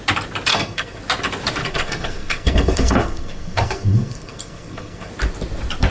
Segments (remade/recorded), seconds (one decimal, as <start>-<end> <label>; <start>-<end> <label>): 0.0-0.5 recorded; 0.5-1.0 remade; 1.0-1.6 recorded; 1.6-5.1 remade; 5.1-5.9 recorded